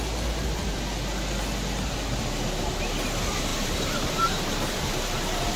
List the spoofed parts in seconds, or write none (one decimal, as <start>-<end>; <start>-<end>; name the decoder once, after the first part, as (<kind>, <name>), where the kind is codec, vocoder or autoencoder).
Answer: 3.5-5.6 (vocoder, BigVGAN v2)